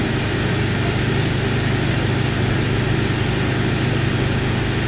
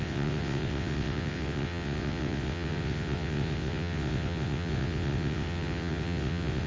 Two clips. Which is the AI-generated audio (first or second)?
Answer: second